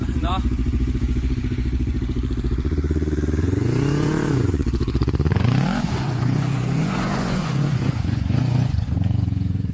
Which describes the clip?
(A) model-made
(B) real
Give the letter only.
A